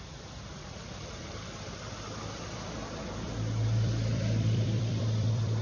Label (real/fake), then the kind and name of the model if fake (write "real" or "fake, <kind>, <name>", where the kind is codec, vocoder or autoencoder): fake, vocoder, BigVGAN v2